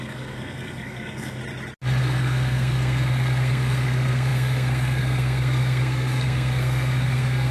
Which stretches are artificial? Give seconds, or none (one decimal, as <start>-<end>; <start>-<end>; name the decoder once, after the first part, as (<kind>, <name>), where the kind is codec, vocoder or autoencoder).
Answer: 0.0-1.4 (codec, SNAC); 2.0-7.5